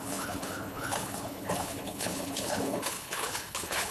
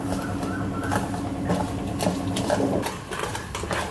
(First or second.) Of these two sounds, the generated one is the first